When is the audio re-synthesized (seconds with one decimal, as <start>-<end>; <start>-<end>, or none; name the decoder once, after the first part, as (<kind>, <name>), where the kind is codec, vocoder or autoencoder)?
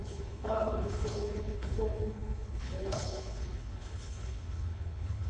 0.0-5.3 (codec, HILCodec)